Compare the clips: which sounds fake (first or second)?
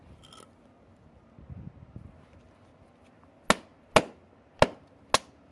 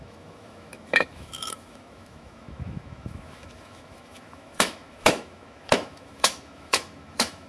second